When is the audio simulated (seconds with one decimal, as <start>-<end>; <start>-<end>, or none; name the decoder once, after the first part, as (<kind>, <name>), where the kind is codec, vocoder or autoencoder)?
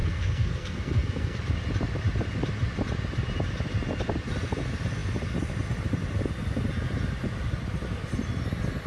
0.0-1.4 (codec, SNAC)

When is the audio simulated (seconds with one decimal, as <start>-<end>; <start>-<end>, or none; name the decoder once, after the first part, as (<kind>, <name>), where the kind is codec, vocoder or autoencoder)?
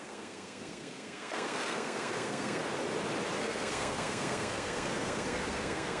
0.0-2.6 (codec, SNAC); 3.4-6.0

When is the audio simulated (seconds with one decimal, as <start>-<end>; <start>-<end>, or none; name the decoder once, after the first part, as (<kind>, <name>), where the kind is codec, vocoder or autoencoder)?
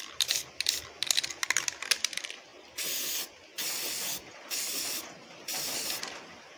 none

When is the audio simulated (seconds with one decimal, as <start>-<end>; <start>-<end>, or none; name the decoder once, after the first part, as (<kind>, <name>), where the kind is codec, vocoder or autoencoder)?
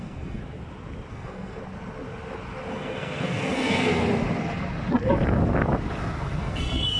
0.0-0.4 (codec, SNAC); 1.1-1.6; 2.7-4.0; 6.4-7.0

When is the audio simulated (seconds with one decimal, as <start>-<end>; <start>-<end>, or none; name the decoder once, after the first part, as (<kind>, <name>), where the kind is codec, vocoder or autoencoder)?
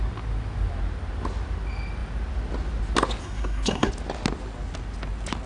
3.2-3.9 (codec, SNAC)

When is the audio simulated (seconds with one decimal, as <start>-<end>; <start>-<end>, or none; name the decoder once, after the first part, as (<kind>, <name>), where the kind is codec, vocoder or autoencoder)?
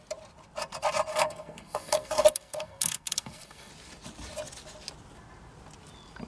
1.1-3.7 (codec, SNAC)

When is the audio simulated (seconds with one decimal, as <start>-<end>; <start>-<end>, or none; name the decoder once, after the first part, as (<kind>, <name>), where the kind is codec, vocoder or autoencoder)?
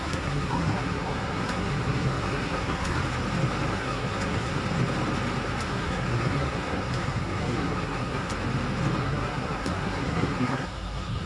0.0-3.0 (codec, SNAC); 3.7-4.6; 5.7-8.3; 9.0-11.3